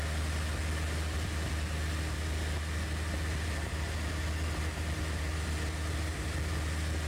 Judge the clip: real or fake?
real